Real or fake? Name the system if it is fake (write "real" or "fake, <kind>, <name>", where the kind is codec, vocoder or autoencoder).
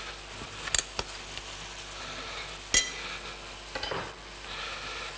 real